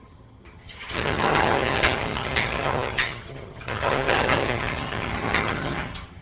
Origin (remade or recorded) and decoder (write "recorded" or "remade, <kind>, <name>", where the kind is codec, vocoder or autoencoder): remade, vocoder, HiFi-GAN